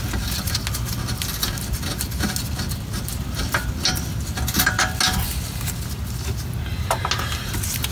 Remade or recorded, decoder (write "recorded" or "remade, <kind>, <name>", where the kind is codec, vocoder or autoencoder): recorded